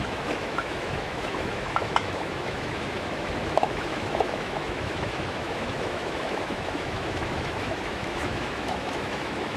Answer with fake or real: fake